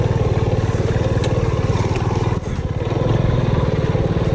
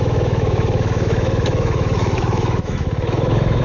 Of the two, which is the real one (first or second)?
first